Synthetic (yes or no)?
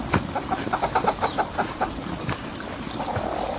no